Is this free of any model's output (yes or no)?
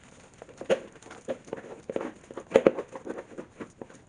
yes